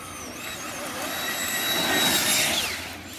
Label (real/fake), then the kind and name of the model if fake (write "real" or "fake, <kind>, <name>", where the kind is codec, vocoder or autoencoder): real